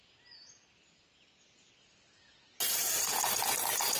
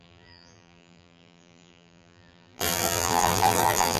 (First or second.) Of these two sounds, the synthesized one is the second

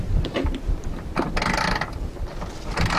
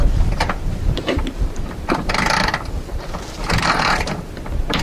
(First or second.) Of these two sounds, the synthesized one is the second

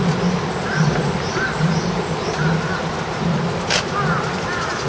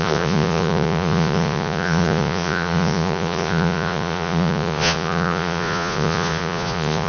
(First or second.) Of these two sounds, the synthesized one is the second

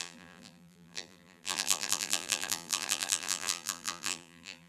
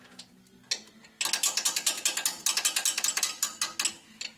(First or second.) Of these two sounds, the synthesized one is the first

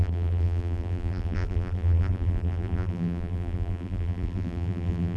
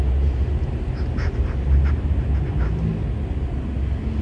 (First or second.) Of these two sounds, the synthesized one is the first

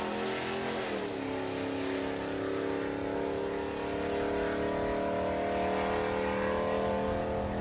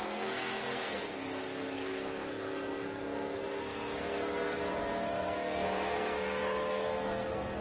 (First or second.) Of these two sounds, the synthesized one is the second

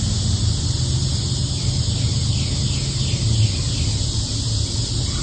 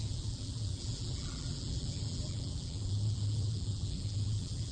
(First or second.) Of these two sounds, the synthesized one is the second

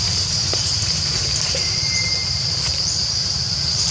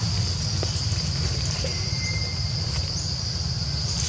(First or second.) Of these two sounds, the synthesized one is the first